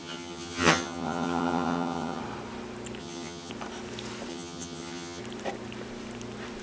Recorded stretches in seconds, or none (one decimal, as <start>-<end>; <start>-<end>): 2.2-3.0; 3.5-4.3; 5.2-6.6